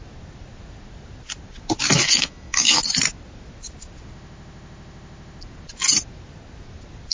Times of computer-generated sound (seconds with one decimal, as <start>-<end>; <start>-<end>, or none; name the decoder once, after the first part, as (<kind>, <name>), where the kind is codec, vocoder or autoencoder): 2.0-2.8 (autoencoder, DAC-VAE)